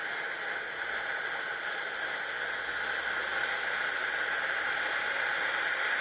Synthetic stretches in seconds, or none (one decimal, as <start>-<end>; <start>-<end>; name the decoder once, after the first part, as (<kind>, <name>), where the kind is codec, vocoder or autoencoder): 4.0-5.6 (vocoder, BigVGAN v2)